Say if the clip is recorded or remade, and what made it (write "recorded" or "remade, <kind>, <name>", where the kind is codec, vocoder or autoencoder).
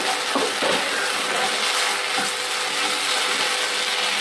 recorded